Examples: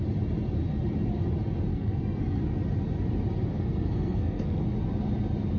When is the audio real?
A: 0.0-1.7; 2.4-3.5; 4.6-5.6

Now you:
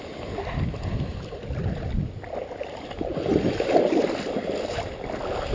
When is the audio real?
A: 0.0-5.5